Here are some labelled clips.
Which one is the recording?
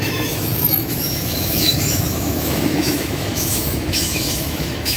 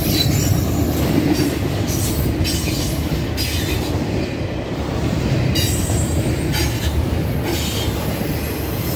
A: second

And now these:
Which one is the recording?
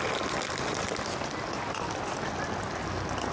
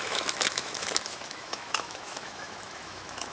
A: first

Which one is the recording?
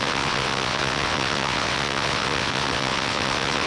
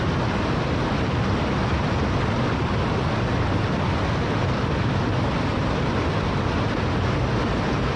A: second